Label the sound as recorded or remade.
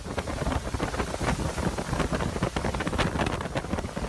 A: recorded